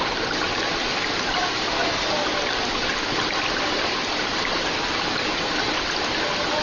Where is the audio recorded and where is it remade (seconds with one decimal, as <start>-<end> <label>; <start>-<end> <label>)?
0.0-1.8 recorded; 1.8-5.8 remade; 5.8-6.6 recorded